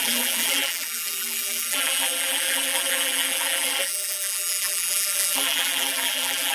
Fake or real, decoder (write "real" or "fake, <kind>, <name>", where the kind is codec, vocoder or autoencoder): fake, vocoder, BigVGAN v2